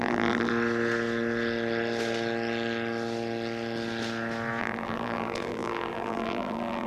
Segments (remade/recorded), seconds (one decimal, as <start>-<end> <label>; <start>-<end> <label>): 0.0-0.5 remade; 0.5-4.6 recorded; 4.6-6.9 remade